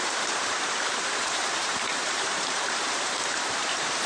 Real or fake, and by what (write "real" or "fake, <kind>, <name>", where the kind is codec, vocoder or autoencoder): fake, vocoder, BigVGAN v2